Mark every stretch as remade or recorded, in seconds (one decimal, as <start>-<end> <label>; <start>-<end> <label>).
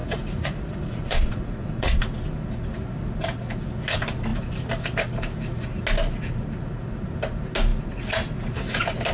0.0-2.0 remade; 2.0-9.1 recorded